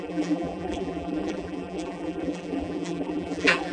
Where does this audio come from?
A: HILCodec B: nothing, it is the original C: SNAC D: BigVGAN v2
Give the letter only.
D